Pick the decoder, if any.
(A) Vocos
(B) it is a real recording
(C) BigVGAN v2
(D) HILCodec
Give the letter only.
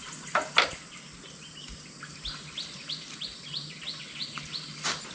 B